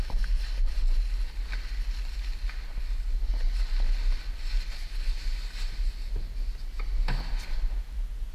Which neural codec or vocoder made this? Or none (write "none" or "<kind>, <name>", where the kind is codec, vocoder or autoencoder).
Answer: none